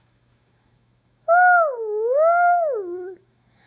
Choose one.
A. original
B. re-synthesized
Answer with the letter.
B